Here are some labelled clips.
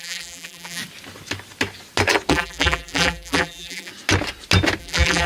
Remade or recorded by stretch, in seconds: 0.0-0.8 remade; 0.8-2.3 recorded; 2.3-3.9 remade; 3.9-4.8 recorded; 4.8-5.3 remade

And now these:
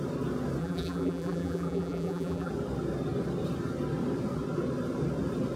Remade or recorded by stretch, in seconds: 0.0-0.6 recorded; 0.6-2.5 remade; 2.5-5.6 recorded

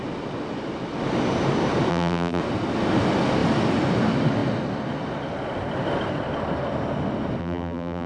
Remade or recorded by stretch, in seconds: 0.0-1.9 recorded; 1.9-2.4 remade; 2.4-7.4 recorded; 7.4-8.1 remade

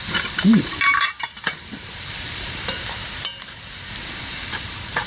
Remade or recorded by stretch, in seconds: 0.0-5.1 remade

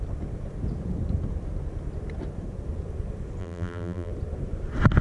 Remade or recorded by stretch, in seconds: 0.0-3.4 recorded; 3.4-4.1 remade; 4.1-5.0 recorded

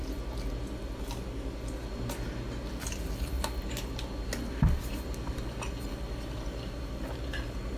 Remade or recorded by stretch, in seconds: 0.0-7.8 recorded

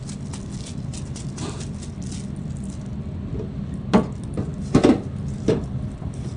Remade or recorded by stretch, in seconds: 0.0-0.9 recorded; 0.9-2.4 remade; 2.4-2.9 recorded; 2.9-3.4 remade; 3.4-4.5 recorded; 4.5-6.4 remade